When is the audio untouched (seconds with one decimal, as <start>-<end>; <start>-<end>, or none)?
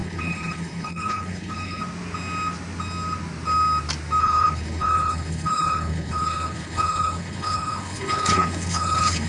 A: 1.8-4.2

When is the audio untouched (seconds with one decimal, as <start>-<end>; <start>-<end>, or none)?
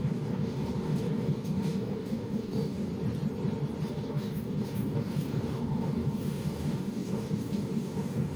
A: 2.9-3.9